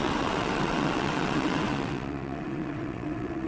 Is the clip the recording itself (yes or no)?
no